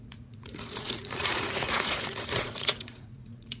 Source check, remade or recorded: remade